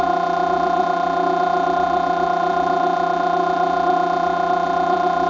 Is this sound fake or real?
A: fake